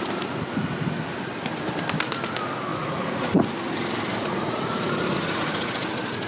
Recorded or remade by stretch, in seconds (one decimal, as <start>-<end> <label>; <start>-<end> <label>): 0.0-2.7 recorded; 2.7-3.4 remade; 3.4-4.2 recorded; 4.2-5.7 remade; 5.7-6.3 recorded